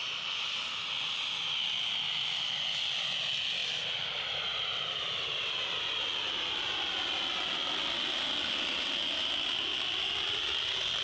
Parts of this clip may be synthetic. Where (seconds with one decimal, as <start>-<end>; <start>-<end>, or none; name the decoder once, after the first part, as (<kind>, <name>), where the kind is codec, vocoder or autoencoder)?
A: none